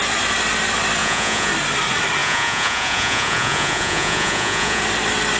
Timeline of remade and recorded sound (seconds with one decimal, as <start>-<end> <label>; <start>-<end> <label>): 0.0-1.0 recorded; 1.0-1.5 remade; 1.5-2.2 recorded; 2.2-4.8 remade; 4.8-5.4 recorded

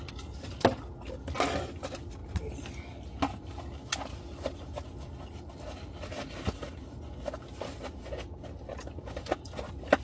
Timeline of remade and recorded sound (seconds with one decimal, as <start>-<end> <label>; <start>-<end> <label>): 0.0-10.0 recorded

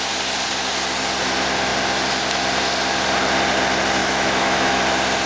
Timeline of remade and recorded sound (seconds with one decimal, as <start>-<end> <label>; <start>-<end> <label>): 0.0-4.0 recorded; 4.0-4.8 remade; 4.8-5.3 recorded

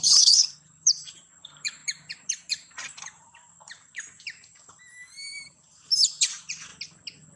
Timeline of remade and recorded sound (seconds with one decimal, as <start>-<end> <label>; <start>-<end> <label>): 0.0-6.7 remade; 6.7-7.4 recorded

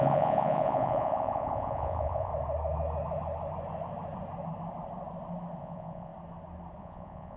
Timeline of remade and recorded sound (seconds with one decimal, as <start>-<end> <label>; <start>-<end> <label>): 0.0-2.3 remade; 2.3-5.6 recorded; 5.6-6.1 remade; 6.1-6.8 recorded; 6.8-7.4 remade

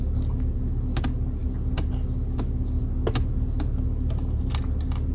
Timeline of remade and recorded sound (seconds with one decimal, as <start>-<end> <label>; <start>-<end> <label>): 0.0-5.1 recorded

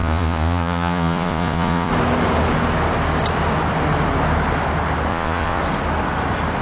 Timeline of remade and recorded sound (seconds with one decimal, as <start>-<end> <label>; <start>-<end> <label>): 0.0-1.9 remade; 1.9-5.1 recorded; 5.1-5.6 remade; 5.6-6.6 recorded